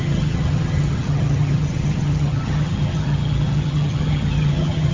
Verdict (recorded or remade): remade